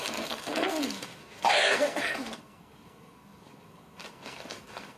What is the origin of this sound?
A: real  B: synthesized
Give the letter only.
B